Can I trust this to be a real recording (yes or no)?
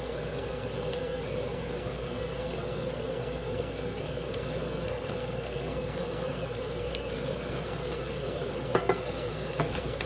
no